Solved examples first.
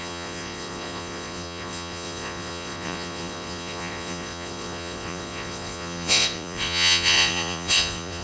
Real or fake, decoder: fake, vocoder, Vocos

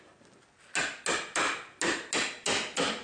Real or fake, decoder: real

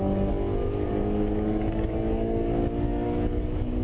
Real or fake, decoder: fake, codec, DAC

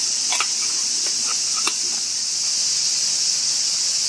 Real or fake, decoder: real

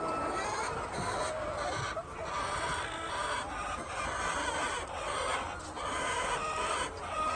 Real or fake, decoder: real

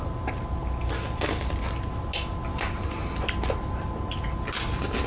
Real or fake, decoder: real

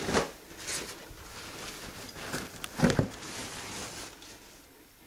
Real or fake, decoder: real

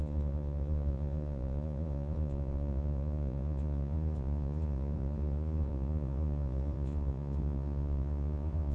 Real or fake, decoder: fake, vocoder, Vocos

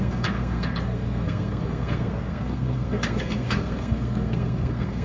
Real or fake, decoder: fake, codec, SNAC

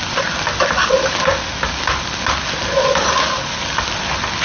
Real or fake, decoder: real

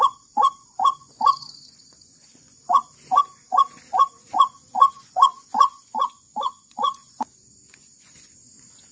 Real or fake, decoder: fake, vocoder, Vocos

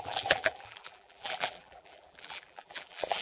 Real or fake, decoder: fake, vocoder, BigVGAN v2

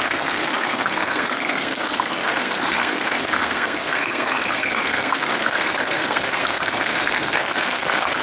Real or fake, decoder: fake, codec, SNAC